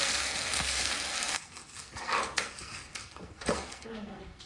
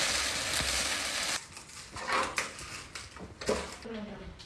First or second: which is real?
second